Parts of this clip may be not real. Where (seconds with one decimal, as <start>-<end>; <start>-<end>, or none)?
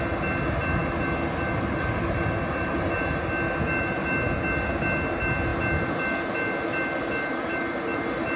none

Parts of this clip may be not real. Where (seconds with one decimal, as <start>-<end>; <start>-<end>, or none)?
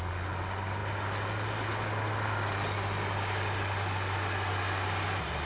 none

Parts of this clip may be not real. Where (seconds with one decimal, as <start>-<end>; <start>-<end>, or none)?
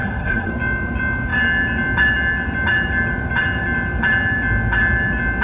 0.0-0.5